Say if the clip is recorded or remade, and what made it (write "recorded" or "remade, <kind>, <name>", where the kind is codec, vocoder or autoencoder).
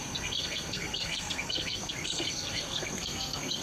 remade, codec, SNAC